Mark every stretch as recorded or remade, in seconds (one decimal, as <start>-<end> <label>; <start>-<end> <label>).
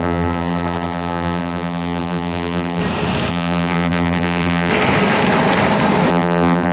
0.0-2.8 remade; 2.8-3.3 recorded; 3.3-4.7 remade; 4.7-6.1 recorded; 6.1-6.7 remade